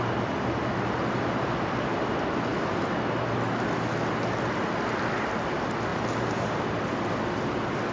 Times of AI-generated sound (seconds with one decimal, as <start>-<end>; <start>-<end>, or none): 5.9-7.1